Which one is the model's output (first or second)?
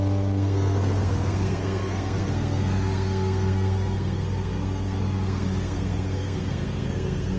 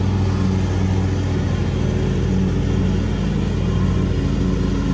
first